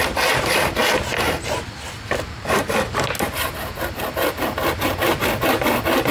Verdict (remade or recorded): recorded